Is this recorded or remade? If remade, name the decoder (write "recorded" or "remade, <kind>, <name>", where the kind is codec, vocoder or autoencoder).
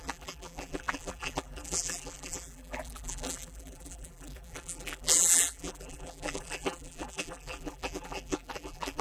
remade, vocoder, BigVGAN v2